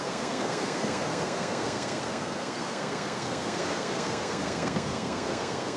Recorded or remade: remade